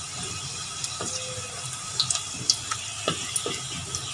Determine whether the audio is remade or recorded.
recorded